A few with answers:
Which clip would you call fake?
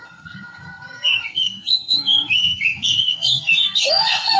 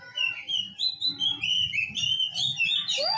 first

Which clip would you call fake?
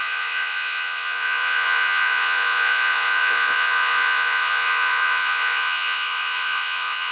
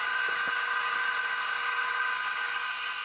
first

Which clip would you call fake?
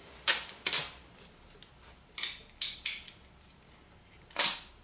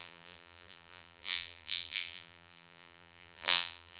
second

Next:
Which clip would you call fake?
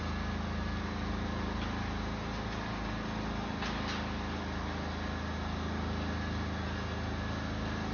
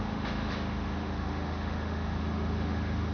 second